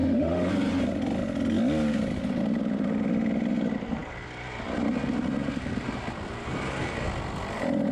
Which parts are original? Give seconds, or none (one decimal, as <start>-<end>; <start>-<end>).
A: 0.5-7.9